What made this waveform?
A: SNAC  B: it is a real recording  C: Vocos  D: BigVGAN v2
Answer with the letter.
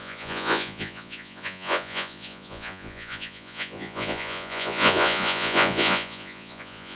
C